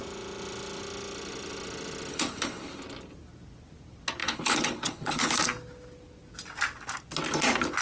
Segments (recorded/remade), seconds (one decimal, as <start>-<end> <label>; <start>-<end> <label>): 0.0-2.1 recorded; 2.1-2.8 remade; 2.8-4.2 recorded; 4.2-5.3 remade; 5.3-7.8 recorded